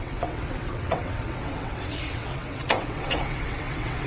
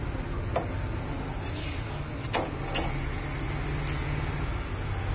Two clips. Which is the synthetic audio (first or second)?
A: first